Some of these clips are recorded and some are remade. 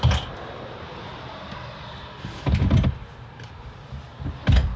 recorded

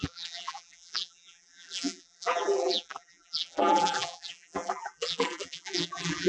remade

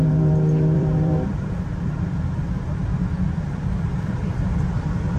remade